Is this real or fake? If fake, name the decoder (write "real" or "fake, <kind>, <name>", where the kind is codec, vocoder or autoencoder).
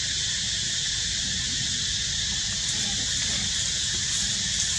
real